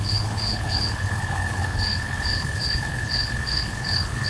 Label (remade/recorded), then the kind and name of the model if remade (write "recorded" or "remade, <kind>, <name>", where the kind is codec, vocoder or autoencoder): remade, codec, HILCodec